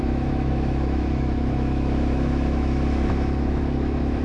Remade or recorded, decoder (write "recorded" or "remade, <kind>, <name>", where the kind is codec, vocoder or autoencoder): remade, autoencoder, DAC-VAE